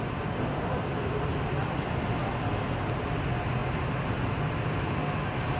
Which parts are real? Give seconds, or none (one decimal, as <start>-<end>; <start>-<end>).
0.0-1.3; 1.9-5.6